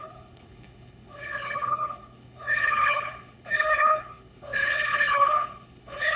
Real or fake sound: fake